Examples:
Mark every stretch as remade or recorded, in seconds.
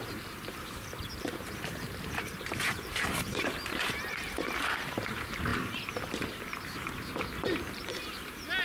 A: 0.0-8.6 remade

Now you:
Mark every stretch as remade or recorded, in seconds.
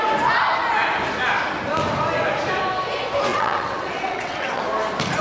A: 0.0-3.3 recorded; 3.3-4.6 remade; 4.6-5.2 recorded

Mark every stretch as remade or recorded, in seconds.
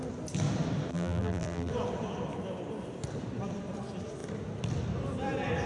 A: 0.0-0.9 recorded; 0.9-1.7 remade; 1.7-5.7 recorded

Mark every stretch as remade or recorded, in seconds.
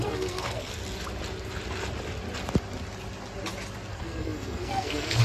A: 0.0-0.8 remade; 0.8-3.9 recorded; 3.9-5.2 remade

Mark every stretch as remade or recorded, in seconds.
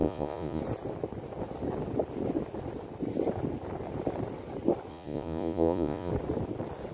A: 0.0-0.6 remade; 0.6-4.9 recorded; 4.9-6.1 remade; 6.1-6.9 recorded